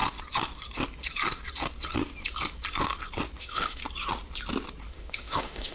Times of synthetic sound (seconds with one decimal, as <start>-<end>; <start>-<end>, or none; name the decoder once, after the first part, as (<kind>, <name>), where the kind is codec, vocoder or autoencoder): 3.4-3.8 (autoencoder, DAC-VAE); 4.9-5.7